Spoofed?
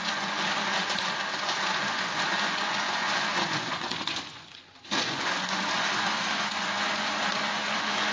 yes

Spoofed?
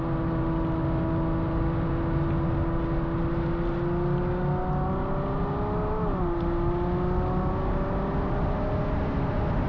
no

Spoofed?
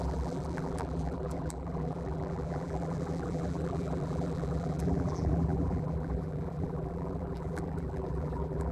yes